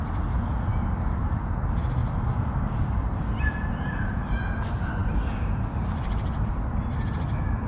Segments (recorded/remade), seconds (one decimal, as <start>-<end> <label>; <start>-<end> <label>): 0.0-0.7 recorded; 0.7-1.4 remade; 1.4-2.0 recorded; 2.0-4.4 remade; 4.4-5.0 recorded; 5.0-6.5 remade; 6.5-7.7 recorded